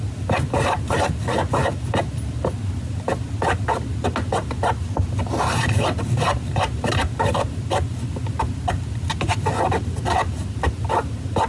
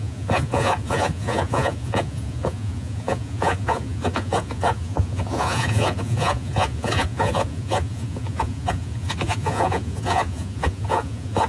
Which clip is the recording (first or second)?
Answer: first